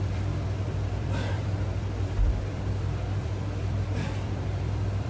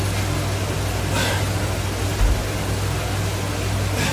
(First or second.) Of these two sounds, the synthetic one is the first